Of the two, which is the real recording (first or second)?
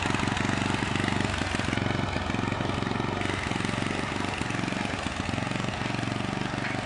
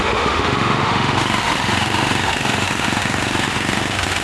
first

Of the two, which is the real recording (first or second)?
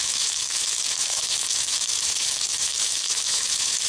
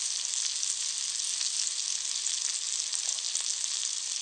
second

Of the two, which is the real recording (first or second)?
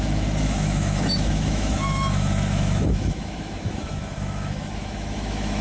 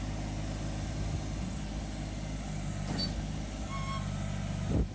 second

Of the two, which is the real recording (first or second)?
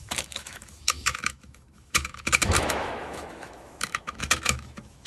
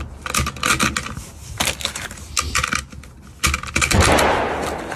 second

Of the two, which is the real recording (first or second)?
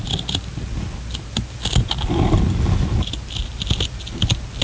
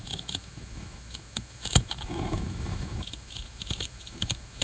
first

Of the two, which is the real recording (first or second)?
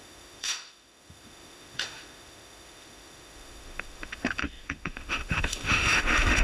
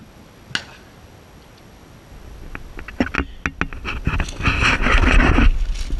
second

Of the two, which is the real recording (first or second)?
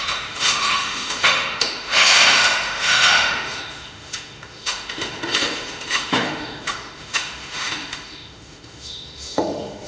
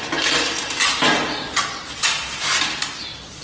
second